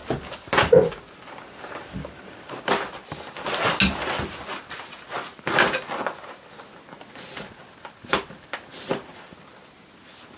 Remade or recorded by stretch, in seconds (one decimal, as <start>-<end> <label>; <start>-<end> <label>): 0.0-10.4 recorded